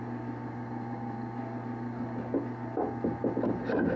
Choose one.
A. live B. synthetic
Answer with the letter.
A